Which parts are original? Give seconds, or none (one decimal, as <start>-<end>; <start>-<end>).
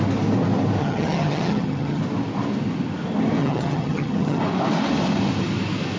0.0-0.8; 2.0-3.4; 4.4-6.0